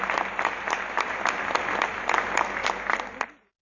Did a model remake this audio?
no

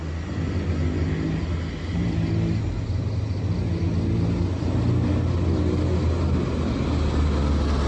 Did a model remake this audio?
no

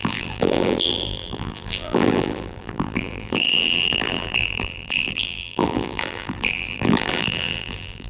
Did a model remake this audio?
yes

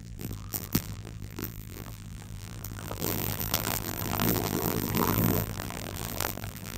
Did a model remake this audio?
yes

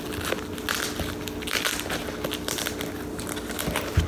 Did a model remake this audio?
no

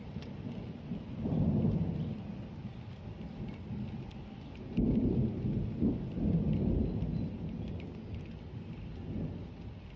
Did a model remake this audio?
no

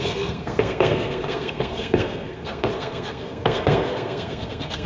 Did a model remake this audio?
yes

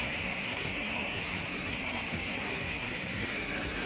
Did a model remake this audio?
yes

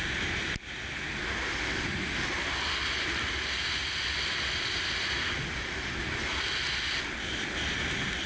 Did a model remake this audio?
no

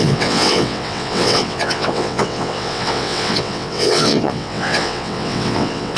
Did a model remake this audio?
yes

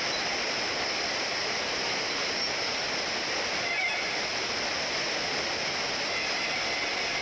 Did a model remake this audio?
no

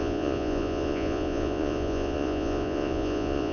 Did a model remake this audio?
yes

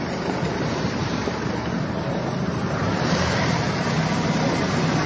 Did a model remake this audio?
yes